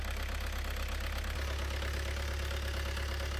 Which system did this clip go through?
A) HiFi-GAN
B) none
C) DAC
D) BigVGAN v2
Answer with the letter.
B